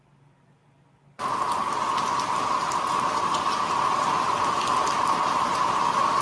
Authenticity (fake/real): real